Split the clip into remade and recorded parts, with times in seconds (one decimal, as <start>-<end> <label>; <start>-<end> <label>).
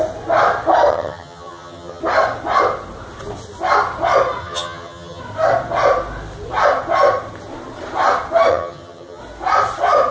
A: 0.0-0.9 recorded; 0.9-2.0 remade; 2.0-4.4 recorded; 4.4-5.2 remade; 5.2-8.5 recorded; 8.5-9.2 remade; 9.2-10.1 recorded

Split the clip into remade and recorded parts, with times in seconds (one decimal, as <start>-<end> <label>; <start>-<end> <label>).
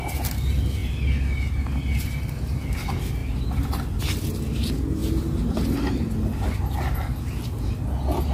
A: 0.0-8.3 recorded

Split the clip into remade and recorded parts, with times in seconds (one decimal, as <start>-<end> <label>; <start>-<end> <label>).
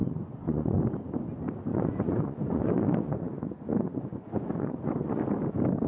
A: 0.0-0.8 remade; 0.8-1.7 recorded; 1.7-5.2 remade; 5.2-5.9 recorded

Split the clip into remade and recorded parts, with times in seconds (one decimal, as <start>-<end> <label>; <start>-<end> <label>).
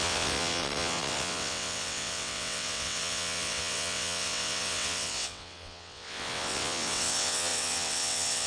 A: 0.0-8.5 remade